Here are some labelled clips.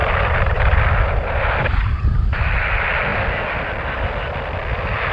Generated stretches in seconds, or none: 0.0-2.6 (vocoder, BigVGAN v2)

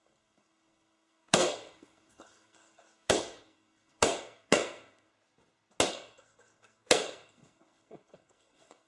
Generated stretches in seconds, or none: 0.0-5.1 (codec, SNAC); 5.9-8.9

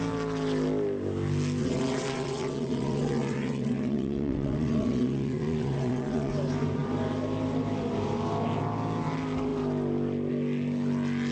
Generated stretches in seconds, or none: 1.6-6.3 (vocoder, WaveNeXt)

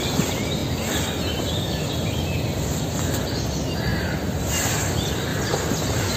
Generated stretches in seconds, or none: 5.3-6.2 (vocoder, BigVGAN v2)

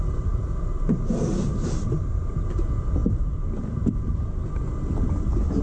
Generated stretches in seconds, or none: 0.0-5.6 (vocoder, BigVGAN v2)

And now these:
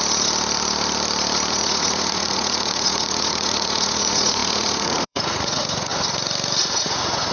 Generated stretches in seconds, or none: 1.5-5.9 (vocoder, Vocos); 6.8-7.3

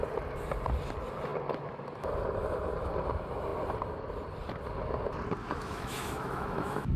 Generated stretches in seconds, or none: 5.4-7.0 (autoencoder, DAC-VAE)

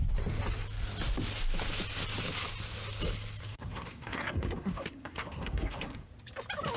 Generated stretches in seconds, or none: 3.4-6.1 (codec, SNAC)